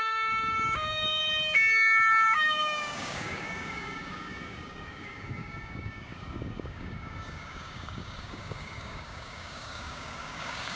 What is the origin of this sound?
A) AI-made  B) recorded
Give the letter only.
A